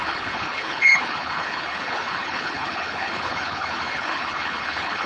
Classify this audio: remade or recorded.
remade